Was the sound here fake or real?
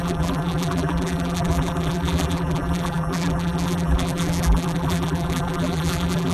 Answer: fake